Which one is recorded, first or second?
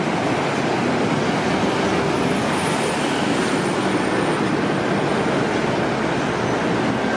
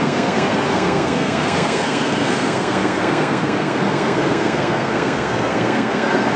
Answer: first